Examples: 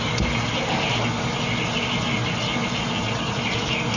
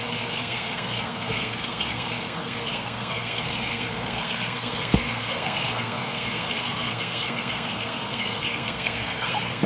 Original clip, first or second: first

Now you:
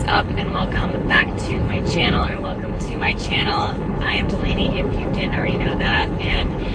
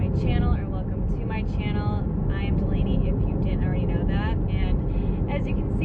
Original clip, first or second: second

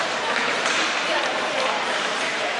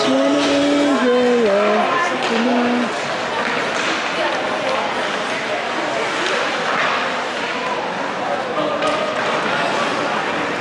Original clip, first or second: second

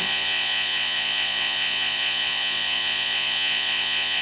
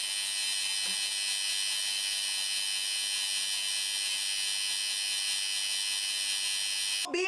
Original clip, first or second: second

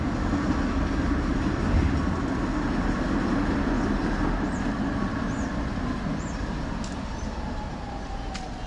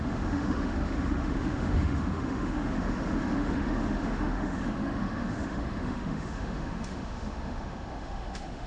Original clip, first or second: first